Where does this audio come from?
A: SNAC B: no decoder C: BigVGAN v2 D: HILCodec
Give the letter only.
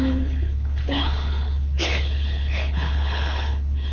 D